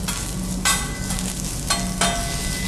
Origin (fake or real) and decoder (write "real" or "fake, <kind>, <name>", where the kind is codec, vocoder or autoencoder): real